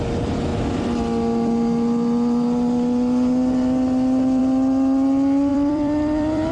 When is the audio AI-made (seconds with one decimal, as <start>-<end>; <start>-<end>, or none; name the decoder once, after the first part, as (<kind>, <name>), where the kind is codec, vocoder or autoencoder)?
5.5-6.5 (vocoder, BigVGAN v2)